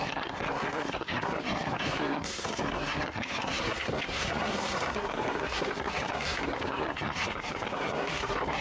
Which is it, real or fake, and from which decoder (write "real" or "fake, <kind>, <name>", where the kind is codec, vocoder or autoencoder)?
fake, codec, SNAC